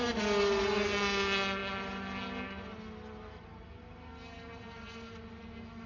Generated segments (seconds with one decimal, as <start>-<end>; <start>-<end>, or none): 0.0-0.9